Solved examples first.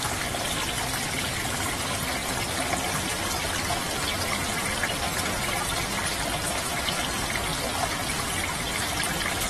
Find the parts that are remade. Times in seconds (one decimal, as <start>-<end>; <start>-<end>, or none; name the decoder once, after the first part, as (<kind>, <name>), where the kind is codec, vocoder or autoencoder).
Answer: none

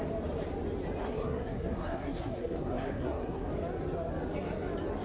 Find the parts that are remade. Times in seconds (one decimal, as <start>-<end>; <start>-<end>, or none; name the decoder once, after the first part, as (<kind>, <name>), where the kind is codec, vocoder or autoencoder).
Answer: 1.0-3.5 (codec, SNAC)

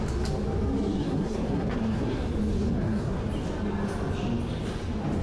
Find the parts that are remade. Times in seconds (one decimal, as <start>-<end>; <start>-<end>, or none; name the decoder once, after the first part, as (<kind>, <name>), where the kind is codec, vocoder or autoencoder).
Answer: 1.0-2.3 (codec, SNAC); 2.7-3.3